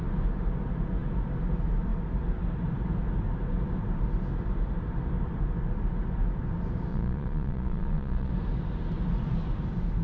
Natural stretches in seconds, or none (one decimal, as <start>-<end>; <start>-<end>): 0.0-6.9; 8.3-10.0